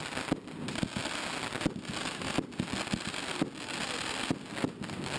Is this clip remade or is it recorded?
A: recorded